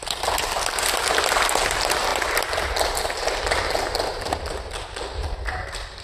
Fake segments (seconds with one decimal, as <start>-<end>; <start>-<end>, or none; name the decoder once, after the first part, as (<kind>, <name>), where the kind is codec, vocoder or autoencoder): none